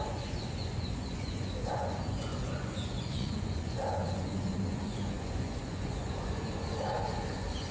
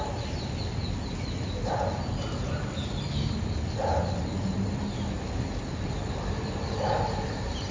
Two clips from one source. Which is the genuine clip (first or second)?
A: second